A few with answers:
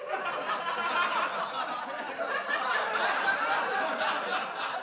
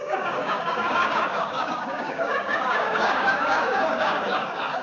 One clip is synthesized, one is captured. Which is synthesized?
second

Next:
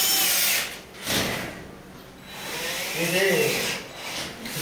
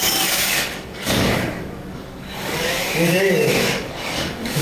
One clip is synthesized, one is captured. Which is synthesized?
second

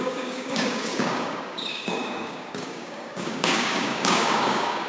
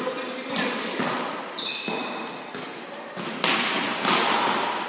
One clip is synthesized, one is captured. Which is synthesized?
first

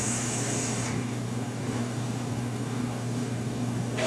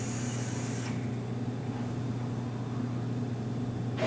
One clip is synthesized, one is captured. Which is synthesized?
first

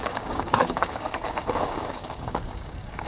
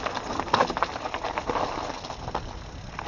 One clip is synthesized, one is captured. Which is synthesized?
first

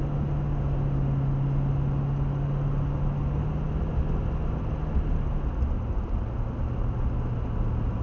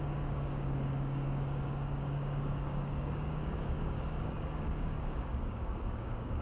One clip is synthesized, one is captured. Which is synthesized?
second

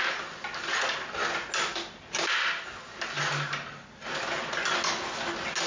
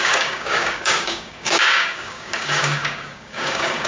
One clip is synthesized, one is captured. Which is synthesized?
second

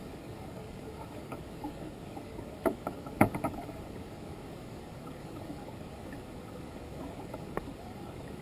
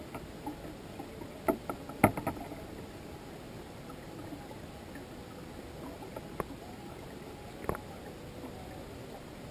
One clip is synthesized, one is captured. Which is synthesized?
first